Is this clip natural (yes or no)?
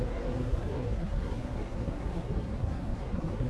no